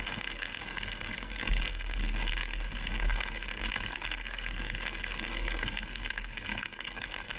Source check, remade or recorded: remade